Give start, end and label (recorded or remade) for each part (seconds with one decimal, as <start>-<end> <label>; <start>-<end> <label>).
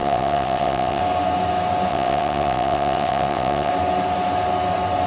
0.0-1.0 remade; 1.0-1.9 recorded; 1.9-3.7 remade; 3.7-5.1 recorded